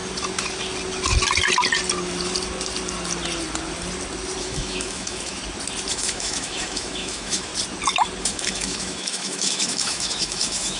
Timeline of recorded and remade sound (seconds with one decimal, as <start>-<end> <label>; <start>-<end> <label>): 0.0-4.4 recorded; 4.4-5.4 remade; 5.4-5.9 recorded; 5.9-7.5 remade; 7.5-8.2 recorded; 8.2-10.8 remade